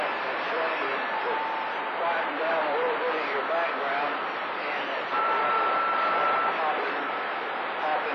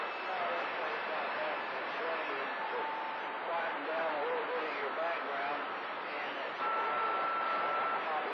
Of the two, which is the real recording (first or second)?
second